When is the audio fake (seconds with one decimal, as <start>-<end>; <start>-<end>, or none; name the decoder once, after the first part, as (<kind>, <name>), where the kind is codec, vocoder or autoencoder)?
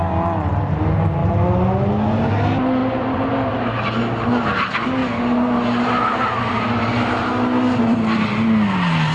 none